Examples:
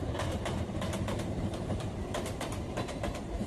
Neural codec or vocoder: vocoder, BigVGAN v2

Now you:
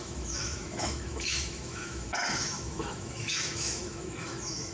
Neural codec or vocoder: autoencoder, DAC-VAE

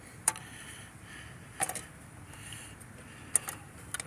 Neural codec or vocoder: none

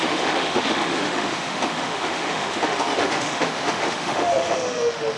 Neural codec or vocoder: autoencoder, DAC-VAE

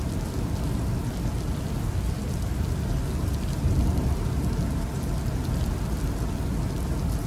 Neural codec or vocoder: none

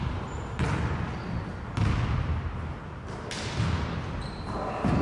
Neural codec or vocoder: none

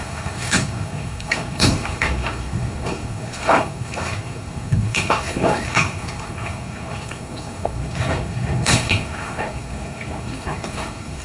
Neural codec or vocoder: codec, SNAC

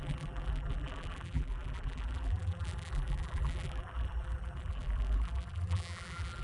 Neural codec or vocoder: vocoder, BigVGAN v2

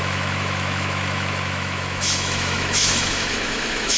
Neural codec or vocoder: autoencoder, DAC-VAE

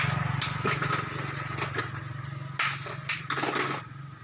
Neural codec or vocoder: none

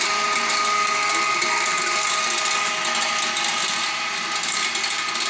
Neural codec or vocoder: none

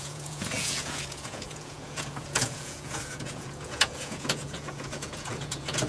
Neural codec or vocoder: vocoder, Vocos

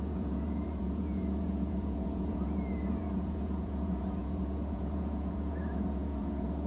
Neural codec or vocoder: vocoder, Vocos